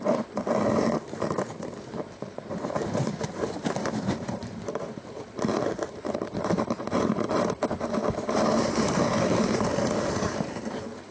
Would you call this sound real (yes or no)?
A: no